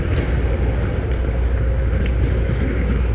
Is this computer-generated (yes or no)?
no